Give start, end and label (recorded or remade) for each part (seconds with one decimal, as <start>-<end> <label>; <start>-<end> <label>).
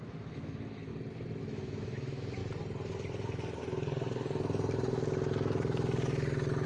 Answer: 0.0-0.9 remade; 0.9-1.4 recorded; 1.4-2.4 remade; 2.4-6.7 recorded